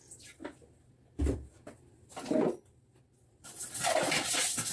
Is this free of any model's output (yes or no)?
yes